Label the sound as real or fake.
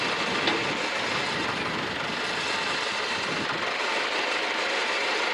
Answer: real